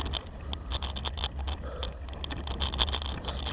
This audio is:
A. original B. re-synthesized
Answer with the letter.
A